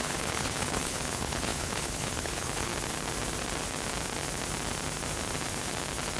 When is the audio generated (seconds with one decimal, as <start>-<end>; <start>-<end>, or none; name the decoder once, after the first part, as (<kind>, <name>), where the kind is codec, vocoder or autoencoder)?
0.0-2.7 (codec, HILCodec)